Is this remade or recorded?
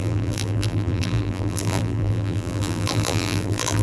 remade